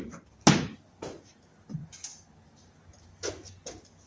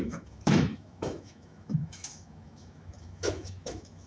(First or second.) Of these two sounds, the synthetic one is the second